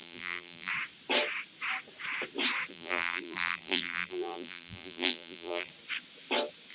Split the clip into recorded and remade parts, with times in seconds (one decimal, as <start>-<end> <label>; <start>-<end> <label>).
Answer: 0.0-0.7 remade; 0.7-2.7 recorded; 2.7-5.7 remade; 5.7-6.7 recorded